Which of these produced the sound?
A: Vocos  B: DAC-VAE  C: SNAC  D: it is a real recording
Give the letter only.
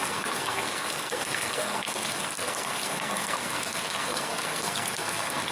C